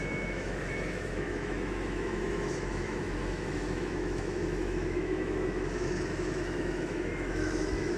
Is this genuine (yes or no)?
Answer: no